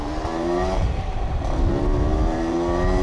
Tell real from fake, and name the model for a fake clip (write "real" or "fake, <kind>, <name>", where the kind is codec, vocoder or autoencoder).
fake, vocoder, BigVGAN v2